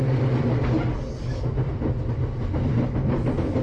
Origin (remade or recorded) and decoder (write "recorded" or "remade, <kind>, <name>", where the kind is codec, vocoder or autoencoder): recorded